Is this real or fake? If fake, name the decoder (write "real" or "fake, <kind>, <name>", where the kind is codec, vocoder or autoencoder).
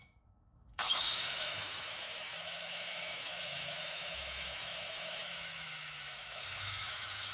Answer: fake, autoencoder, DAC-VAE